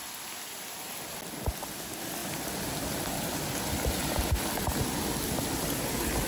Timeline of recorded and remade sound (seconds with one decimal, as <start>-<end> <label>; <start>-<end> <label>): 0.0-0.7 remade; 0.7-2.2 recorded; 2.2-6.3 remade